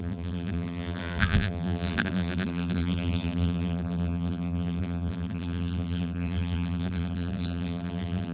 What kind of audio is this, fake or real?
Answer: fake